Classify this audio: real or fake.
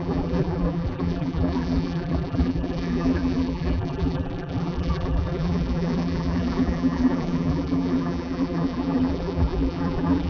fake